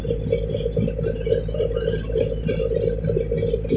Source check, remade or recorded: recorded